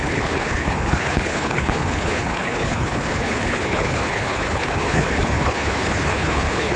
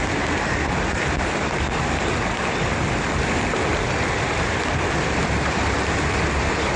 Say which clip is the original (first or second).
second